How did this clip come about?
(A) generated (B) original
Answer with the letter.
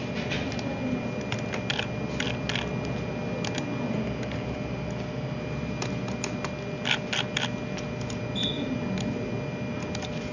B